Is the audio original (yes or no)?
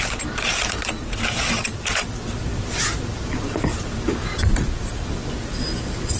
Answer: no